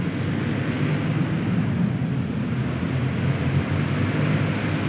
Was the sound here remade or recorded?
recorded